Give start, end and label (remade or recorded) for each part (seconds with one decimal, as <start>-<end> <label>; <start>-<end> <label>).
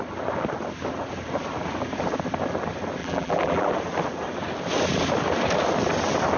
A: 0.0-3.0 recorded; 3.0-3.7 remade; 3.7-6.4 recorded